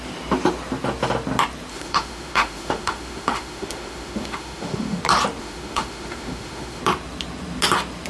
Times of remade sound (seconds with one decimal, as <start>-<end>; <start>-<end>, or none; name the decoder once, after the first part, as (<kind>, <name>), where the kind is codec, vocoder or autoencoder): 1.7-5.0 (autoencoder, DAC-VAE); 5.4-6.8